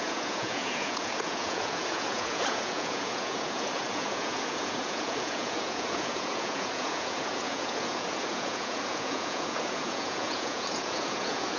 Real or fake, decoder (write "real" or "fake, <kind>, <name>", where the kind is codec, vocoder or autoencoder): fake, vocoder, Vocos